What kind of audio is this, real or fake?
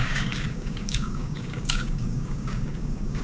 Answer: fake